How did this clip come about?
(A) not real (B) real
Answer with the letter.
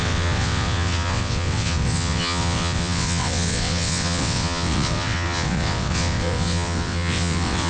A